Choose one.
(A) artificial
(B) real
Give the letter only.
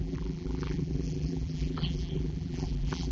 A